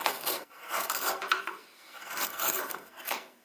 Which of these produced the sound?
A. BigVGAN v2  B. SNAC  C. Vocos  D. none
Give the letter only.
B